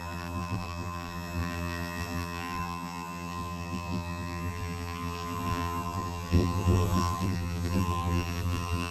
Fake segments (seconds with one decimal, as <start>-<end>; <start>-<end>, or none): 0.0-8.9